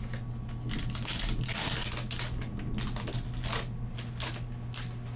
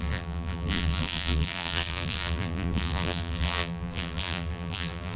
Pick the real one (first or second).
first